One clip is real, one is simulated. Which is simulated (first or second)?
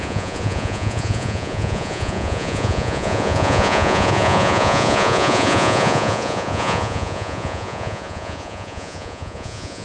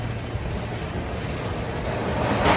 first